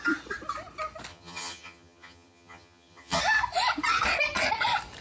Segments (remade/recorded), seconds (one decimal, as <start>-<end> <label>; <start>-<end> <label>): 0.0-1.1 recorded; 1.1-3.2 remade; 3.2-5.0 recorded